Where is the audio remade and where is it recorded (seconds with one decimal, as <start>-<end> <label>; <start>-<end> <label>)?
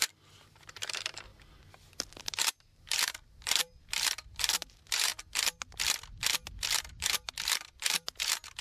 0.0-1.3 remade; 1.3-2.2 recorded; 2.2-5.1 remade; 5.1-6.9 recorded; 6.9-8.6 remade